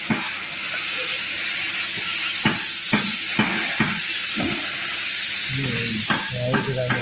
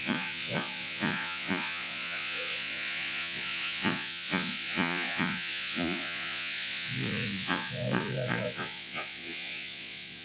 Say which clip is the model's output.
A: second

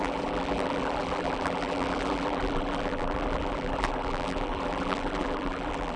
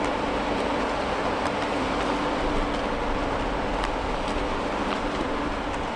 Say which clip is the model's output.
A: first